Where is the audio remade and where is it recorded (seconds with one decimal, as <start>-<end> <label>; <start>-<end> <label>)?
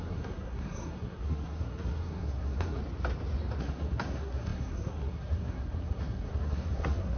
0.0-2.8 remade; 2.8-3.6 recorded; 3.6-7.2 remade